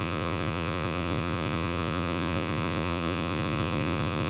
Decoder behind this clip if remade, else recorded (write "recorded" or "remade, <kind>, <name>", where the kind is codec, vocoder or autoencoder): remade, vocoder, Vocos